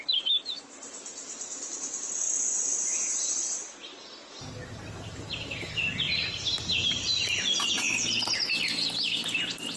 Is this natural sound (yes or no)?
yes